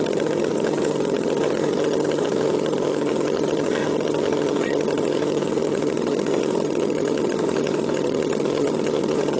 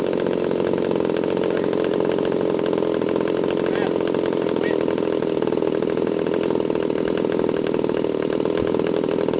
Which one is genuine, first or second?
second